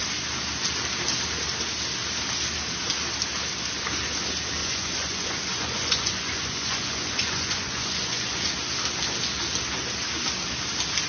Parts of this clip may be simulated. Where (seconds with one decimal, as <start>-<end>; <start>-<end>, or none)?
4.6-8.5